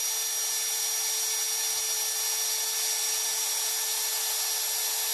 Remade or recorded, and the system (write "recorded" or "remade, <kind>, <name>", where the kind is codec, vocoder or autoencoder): recorded